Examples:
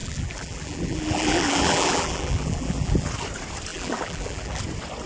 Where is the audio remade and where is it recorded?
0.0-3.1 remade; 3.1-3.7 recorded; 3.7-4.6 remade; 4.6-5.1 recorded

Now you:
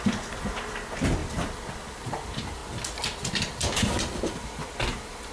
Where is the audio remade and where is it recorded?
0.0-2.6 remade; 2.6-3.3 recorded; 3.3-5.3 remade

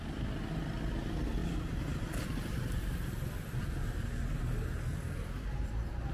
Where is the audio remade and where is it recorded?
0.0-6.1 recorded